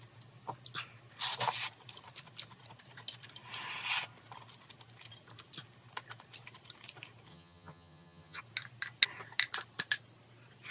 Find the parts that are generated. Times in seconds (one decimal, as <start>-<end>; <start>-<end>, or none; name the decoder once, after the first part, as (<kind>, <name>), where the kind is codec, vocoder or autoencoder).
7.3-8.4 (vocoder, HiFi-GAN)